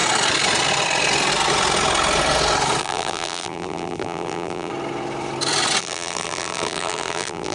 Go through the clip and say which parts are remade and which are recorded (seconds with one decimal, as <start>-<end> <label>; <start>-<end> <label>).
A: 0.0-2.8 recorded; 2.8-4.7 remade; 4.7-5.8 recorded; 5.8-7.5 remade